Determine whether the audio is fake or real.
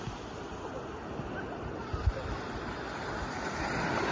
real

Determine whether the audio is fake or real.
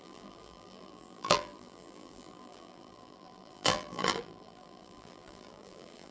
fake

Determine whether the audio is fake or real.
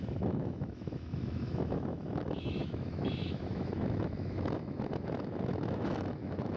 fake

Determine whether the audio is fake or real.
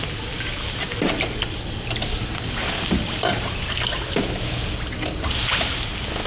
real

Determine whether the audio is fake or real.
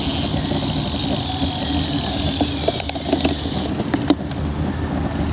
real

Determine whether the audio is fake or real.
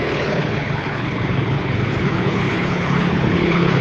fake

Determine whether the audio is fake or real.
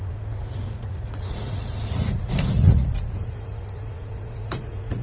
fake